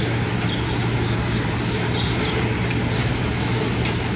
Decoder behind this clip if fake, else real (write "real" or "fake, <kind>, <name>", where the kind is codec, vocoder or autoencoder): real